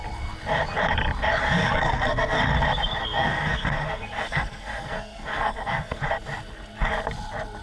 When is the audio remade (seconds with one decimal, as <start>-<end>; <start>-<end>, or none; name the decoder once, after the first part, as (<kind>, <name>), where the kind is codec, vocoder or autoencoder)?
1.4-2.4 (codec, SNAC); 3.0-6.0